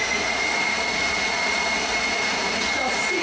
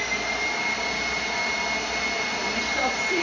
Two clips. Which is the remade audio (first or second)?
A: first